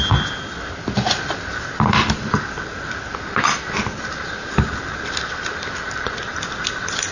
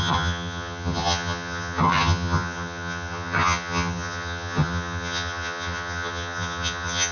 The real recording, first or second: first